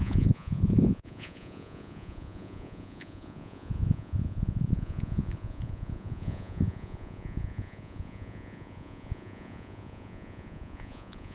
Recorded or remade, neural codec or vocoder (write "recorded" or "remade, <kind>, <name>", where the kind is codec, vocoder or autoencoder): remade, vocoder, Vocos